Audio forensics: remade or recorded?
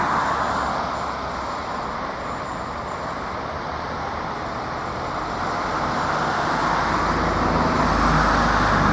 recorded